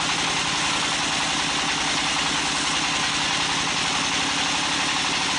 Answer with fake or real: real